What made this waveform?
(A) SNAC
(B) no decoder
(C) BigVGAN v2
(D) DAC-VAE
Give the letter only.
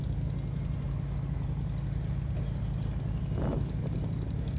B